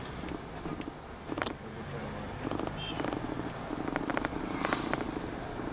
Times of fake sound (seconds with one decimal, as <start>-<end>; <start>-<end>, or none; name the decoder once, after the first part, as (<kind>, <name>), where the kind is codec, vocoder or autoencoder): none